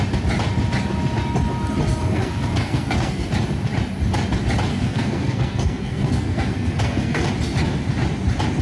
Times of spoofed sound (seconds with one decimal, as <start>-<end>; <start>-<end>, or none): 2.0-3.3; 4.7-7.3